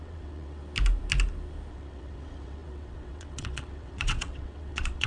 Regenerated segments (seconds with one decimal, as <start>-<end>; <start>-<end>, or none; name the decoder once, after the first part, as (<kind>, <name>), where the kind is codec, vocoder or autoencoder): 0.0-0.6 (vocoder, WaveNeXt); 1.7-5.1